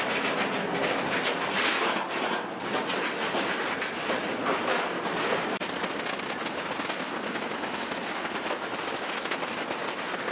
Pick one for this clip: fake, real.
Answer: real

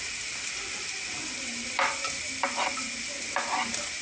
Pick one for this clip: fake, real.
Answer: real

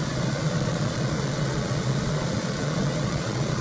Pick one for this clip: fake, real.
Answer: fake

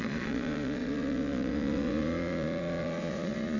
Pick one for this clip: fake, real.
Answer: fake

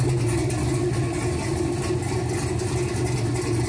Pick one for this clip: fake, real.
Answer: real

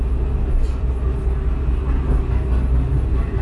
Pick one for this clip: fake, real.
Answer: real